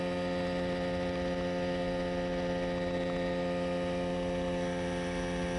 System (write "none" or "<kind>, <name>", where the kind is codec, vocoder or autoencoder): none